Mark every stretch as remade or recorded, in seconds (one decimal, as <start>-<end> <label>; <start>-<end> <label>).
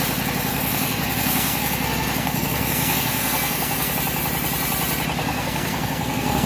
0.0-0.5 recorded; 0.5-3.9 remade; 3.9-5.2 recorded; 5.2-6.5 remade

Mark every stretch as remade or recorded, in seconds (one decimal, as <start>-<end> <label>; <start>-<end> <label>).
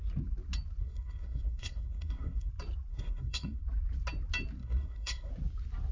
0.0-0.8 recorded; 0.8-2.5 remade; 2.5-2.9 recorded; 2.9-3.6 remade; 3.6-4.6 recorded; 4.6-5.3 remade; 5.3-5.9 recorded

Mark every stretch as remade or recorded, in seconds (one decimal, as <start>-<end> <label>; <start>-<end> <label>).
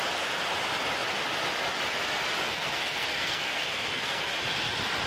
0.0-2.4 recorded; 2.4-4.3 remade; 4.3-5.1 recorded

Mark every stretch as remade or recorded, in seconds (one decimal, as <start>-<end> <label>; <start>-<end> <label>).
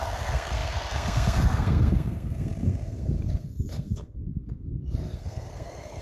0.0-6.0 remade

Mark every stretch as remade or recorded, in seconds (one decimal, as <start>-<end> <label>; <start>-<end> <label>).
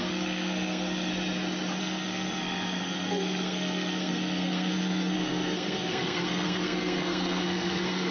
0.0-1.1 remade; 1.1-1.8 recorded; 1.8-8.1 remade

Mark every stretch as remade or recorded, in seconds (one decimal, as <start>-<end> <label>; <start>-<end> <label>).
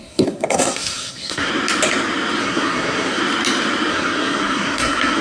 0.0-1.5 remade; 1.5-2.4 recorded; 2.4-3.2 remade; 3.2-3.9 recorded; 3.9-5.2 remade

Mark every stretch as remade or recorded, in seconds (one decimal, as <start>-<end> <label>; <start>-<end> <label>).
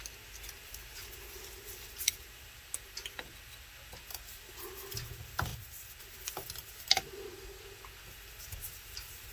0.0-9.3 recorded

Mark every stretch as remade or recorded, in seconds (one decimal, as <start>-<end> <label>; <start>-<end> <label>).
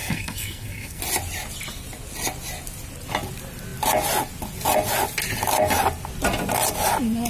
0.0-1.0 remade; 1.0-7.3 recorded